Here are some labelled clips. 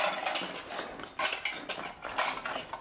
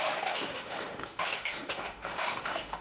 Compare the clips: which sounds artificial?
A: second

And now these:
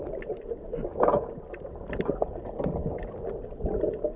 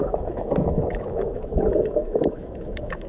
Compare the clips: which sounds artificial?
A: second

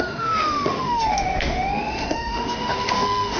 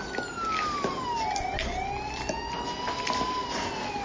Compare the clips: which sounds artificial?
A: first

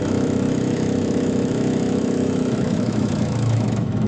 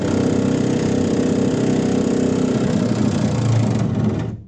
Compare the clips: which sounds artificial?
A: first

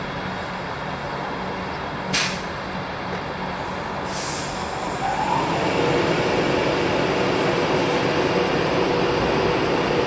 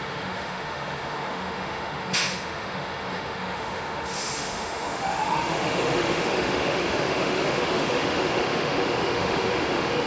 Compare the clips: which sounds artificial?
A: second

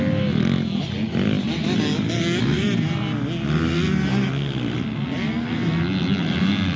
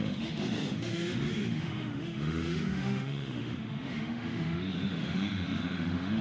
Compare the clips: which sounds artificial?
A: second